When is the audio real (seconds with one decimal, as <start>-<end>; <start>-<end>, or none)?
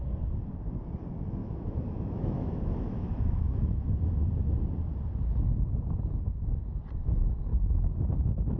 0.0-1.4; 3.7-7.5